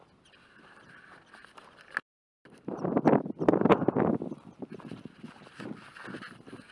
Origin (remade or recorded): recorded